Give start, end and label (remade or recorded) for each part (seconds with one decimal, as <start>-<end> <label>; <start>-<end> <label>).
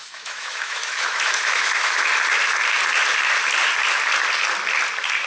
0.0-2.1 remade; 2.1-5.3 recorded